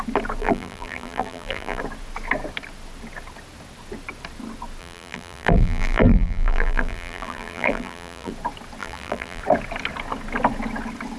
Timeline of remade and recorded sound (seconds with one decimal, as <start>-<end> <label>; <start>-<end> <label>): 0.0-0.4 recorded; 0.4-1.8 remade; 1.8-4.8 recorded; 4.8-8.3 remade; 8.3-8.8 recorded; 8.8-9.4 remade; 9.4-11.2 recorded